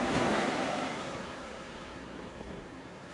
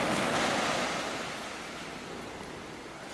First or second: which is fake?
first